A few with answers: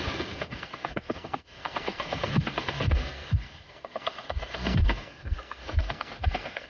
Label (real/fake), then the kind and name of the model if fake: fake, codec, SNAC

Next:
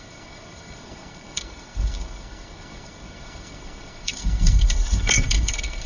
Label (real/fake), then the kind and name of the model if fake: fake, codec, SNAC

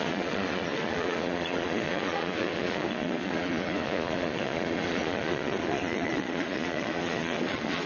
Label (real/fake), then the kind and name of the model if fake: fake, vocoder, Vocos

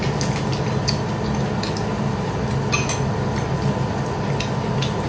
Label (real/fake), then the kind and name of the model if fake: real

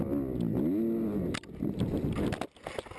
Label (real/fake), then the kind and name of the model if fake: real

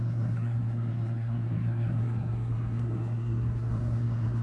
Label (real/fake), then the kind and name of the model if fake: fake, codec, SNAC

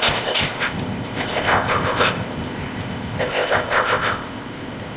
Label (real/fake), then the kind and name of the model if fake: fake, codec, ZipCodec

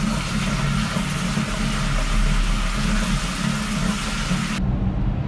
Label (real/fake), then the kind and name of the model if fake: real